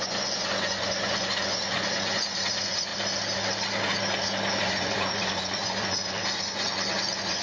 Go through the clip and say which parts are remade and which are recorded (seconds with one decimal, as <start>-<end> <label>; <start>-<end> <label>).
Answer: 0.0-2.9 remade; 2.9-4.6 recorded; 4.6-7.4 remade

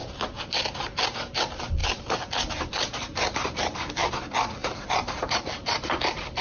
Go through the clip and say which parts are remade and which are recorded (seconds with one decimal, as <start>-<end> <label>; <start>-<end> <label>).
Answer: 0.0-1.8 recorded; 1.8-4.1 remade; 4.1-4.6 recorded; 4.6-6.0 remade; 6.0-6.4 recorded

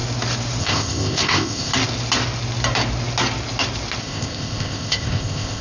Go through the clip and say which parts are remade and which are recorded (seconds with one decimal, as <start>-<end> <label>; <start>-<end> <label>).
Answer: 0.0-0.6 recorded; 0.6-1.7 remade; 1.7-4.0 recorded; 4.0-5.6 remade

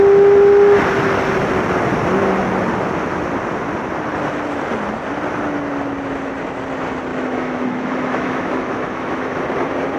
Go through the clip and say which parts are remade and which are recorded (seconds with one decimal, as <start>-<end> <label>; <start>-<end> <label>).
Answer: 0.0-7.1 recorded; 7.1-9.4 remade; 9.4-10.0 recorded